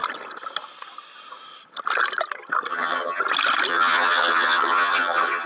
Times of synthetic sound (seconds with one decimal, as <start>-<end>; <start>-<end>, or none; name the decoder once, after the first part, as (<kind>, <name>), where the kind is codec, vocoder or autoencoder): 2.7-3.2 (vocoder, HiFi-GAN); 3.7-5.5